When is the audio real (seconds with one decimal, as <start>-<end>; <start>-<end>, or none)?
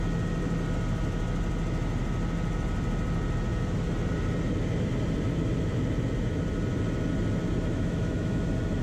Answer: 0.0-7.7; 8.4-8.8